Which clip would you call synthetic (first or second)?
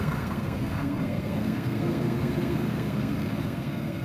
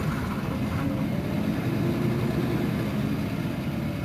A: first